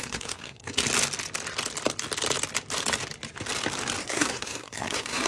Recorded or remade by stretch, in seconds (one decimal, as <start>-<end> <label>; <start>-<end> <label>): 0.0-0.8 remade; 0.8-4.0 recorded; 4.0-5.3 remade